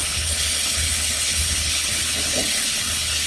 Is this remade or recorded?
remade